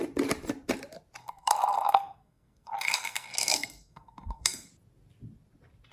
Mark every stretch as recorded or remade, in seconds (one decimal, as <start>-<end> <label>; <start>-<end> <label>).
0.0-1.2 recorded; 1.2-4.7 remade; 4.7-5.9 recorded